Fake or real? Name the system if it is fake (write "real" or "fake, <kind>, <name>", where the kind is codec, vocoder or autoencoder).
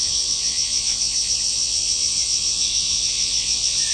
fake, vocoder, Vocos